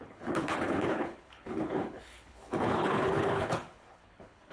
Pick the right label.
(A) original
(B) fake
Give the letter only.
B